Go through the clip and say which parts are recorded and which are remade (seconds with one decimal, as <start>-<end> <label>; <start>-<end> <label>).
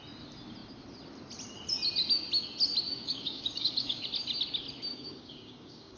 0.0-2.9 recorded; 2.9-4.0 remade; 4.0-4.9 recorded; 4.9-6.0 remade